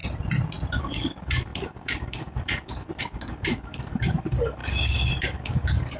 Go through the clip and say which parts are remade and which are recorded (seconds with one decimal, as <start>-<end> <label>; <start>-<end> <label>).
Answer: 0.0-0.8 recorded; 0.8-6.0 remade